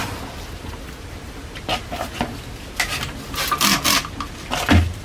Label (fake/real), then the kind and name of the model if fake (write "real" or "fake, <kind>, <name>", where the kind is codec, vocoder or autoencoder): real